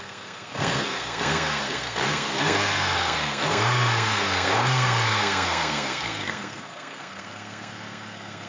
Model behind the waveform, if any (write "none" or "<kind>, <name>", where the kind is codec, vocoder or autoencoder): codec, SNAC